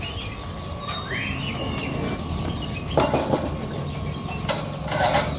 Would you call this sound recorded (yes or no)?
yes